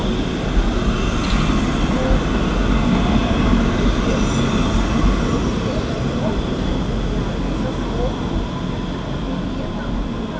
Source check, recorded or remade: recorded